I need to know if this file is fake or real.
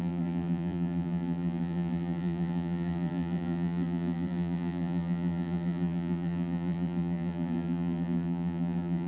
fake